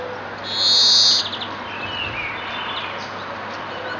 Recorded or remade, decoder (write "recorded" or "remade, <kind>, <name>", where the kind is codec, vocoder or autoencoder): recorded